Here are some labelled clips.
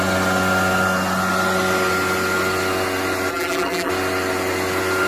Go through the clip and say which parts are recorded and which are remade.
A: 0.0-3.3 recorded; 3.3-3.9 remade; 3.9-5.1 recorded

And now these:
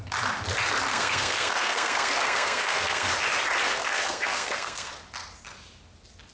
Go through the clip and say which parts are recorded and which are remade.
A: 0.0-0.9 recorded; 0.9-3.1 remade; 3.1-3.8 recorded; 3.8-4.9 remade; 4.9-6.3 recorded

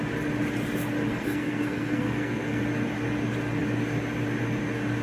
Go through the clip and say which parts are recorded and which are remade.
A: 0.0-1.1 recorded; 1.1-2.6 remade; 2.6-5.0 recorded

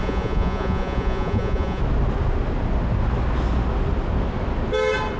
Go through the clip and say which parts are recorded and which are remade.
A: 0.0-1.8 remade; 1.8-5.2 recorded

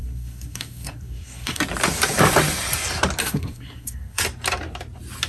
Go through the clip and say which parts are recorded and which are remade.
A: 0.0-1.6 remade; 1.6-3.2 recorded; 3.2-4.2 remade; 4.2-5.3 recorded

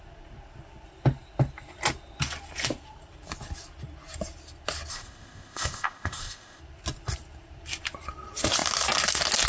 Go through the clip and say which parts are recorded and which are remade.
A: 0.0-4.9 recorded; 4.9-6.6 remade; 6.6-9.5 recorded